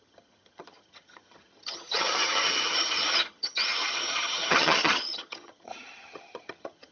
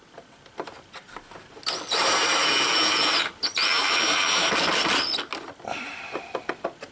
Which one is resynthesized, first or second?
first